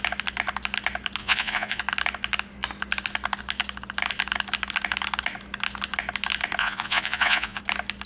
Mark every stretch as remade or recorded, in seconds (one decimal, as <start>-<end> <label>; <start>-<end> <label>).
0.0-1.2 recorded; 1.2-1.8 remade; 1.8-6.6 recorded; 6.6-7.6 remade; 7.6-8.1 recorded

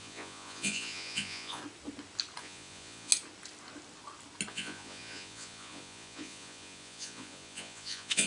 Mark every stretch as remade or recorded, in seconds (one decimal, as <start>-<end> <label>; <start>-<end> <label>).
0.0-1.6 remade; 1.6-2.4 recorded; 2.4-3.1 remade; 3.1-4.5 recorded; 4.5-8.3 remade

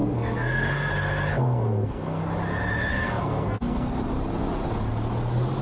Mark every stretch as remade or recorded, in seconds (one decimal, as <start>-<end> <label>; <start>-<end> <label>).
0.0-0.9 remade; 0.9-1.3 recorded; 1.3-2.2 remade; 2.2-2.9 recorded; 2.9-3.9 remade; 3.9-5.6 recorded

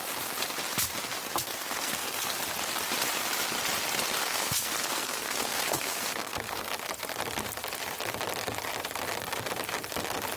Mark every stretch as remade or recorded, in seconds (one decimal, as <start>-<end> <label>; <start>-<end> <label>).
0.0-1.4 recorded; 1.4-2.4 remade; 2.4-4.2 recorded; 4.2-6.7 remade; 6.7-10.4 recorded

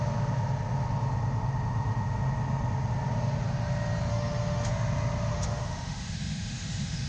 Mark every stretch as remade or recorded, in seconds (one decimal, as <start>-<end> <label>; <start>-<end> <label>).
0.0-4.1 recorded; 4.1-4.7 remade; 4.7-5.3 recorded; 5.3-7.1 remade

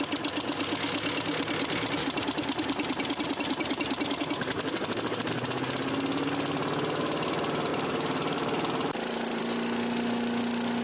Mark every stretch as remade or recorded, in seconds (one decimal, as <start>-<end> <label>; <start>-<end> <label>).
0.0-2.0 recorded; 2.0-5.3 remade; 5.3-7.7 recorded; 7.7-9.4 remade; 9.4-10.8 recorded

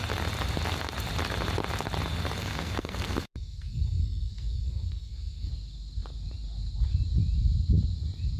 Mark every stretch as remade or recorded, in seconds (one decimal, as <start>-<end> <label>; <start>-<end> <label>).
0.0-2.4 recorded; 2.4-5.5 remade; 5.5-8.4 recorded